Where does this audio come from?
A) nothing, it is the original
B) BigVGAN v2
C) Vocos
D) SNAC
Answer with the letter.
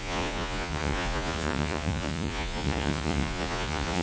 C